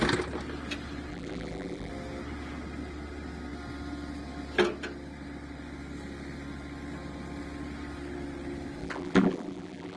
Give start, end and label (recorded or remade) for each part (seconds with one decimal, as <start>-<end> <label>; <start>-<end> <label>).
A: 0.0-1.1 recorded; 1.1-1.9 remade; 1.9-8.8 recorded; 8.8-10.0 remade